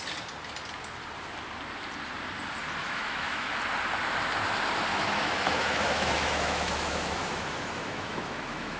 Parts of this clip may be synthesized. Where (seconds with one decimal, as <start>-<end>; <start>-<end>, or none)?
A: 2.8-3.5; 4.9-8.8